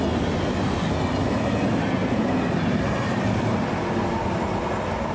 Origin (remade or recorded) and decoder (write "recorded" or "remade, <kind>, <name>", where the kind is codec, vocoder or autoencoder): recorded